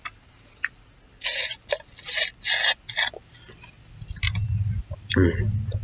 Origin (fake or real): real